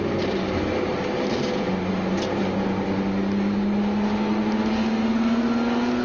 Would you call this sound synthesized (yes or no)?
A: no